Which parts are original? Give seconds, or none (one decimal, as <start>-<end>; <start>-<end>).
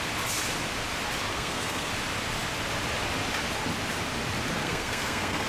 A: 0.0-1.3; 1.9-4.6